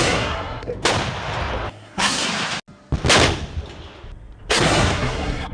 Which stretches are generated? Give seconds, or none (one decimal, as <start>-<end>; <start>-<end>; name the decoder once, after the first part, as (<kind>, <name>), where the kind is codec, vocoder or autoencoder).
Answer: 0.0-0.7 (codec, SNAC); 1.7-2.3; 4.5-5.5